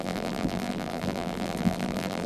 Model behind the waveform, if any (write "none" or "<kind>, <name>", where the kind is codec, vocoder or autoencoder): vocoder, BigVGAN v2